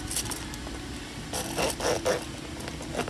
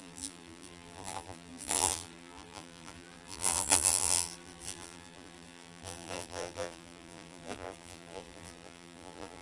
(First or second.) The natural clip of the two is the first